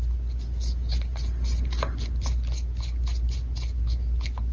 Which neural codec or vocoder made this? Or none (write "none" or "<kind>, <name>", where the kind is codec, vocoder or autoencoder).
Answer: none